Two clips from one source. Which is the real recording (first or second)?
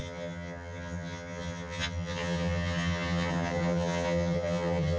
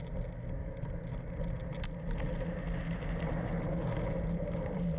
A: second